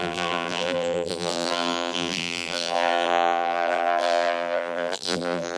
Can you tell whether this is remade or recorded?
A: remade